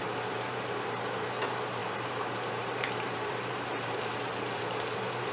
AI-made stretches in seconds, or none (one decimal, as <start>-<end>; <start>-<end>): 0.0-5.3